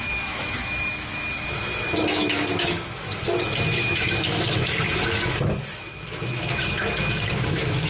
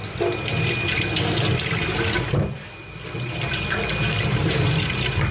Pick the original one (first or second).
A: second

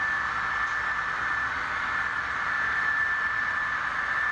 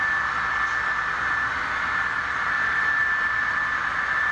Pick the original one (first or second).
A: second